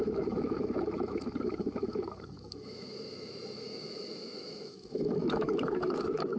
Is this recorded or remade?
remade